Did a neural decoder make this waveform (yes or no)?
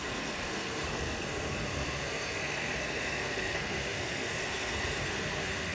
yes